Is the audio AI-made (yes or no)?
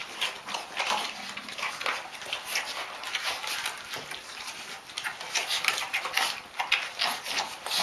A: no